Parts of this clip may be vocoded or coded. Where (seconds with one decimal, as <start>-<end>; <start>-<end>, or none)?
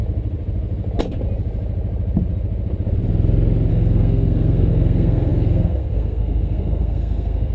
3.7-7.5